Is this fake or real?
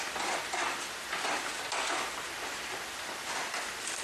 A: real